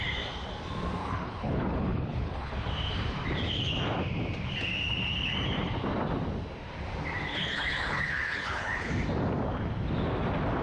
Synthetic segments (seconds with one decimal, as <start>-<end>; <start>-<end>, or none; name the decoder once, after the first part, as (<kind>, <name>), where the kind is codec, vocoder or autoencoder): 1.0-2.5 (codec, HILCodec); 7.3-8.9